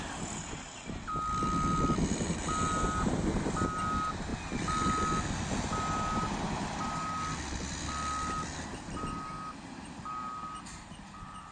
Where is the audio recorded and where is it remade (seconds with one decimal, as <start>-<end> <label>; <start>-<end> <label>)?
0.0-11.5 recorded